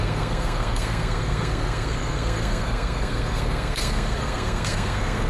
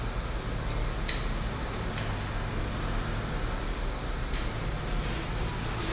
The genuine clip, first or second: second